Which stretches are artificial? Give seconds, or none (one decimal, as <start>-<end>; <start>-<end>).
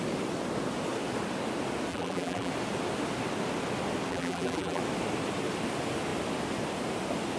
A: 1.9-2.5; 4.1-4.8